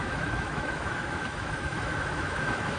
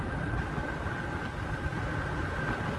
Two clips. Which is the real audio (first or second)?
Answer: second